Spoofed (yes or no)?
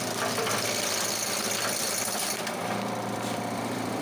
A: yes